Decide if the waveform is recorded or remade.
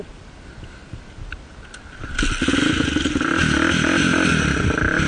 remade